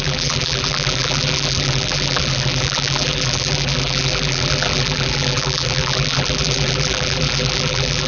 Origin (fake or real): fake